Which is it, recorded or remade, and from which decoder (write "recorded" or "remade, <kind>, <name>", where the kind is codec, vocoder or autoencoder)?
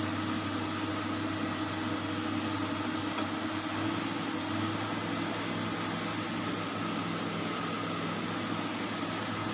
recorded